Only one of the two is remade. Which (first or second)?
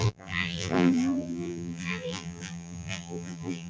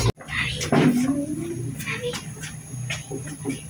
first